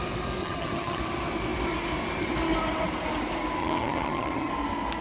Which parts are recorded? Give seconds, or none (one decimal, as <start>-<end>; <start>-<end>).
0.0-0.4; 1.0-3.6; 4.5-5.0